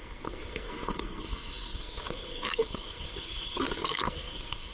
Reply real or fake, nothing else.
fake